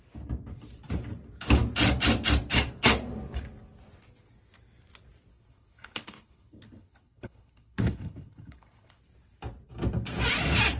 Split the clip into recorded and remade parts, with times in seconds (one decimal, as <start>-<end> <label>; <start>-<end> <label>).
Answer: 0.0-5.3 recorded; 5.3-9.0 remade; 9.0-10.8 recorded